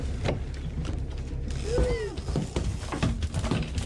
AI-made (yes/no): no